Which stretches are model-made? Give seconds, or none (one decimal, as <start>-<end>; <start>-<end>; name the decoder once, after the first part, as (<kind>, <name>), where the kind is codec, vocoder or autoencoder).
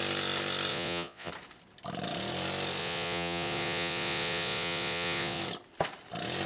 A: 0.7-1.3 (vocoder, Vocos); 2.8-5.4